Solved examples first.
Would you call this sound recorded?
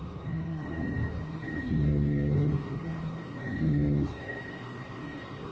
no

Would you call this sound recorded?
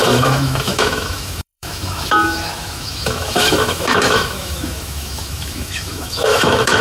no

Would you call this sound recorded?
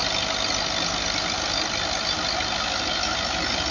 yes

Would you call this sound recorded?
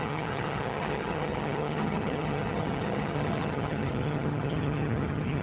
no